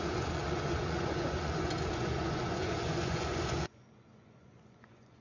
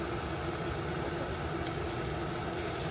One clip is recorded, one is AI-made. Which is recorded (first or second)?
second